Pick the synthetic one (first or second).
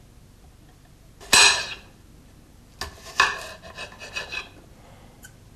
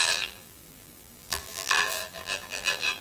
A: second